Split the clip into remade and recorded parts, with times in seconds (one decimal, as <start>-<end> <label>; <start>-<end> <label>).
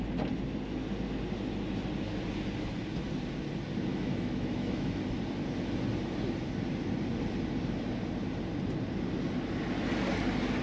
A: 0.0-3.9 recorded; 3.9-5.0 remade; 5.0-10.6 recorded